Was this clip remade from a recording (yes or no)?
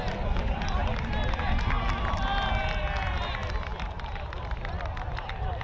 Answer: no